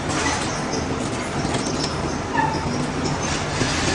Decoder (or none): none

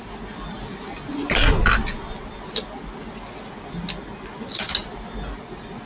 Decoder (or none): none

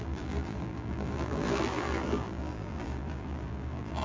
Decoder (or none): vocoder, BigVGAN v2